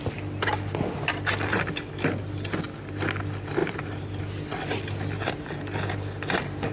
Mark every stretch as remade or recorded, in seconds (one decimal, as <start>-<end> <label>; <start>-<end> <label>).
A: 0.0-3.6 recorded; 3.6-4.2 remade; 4.2-6.7 recorded